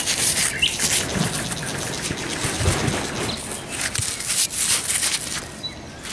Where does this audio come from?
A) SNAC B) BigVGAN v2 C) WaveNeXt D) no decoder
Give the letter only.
D